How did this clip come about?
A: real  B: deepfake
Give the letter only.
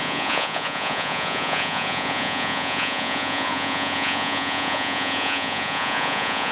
B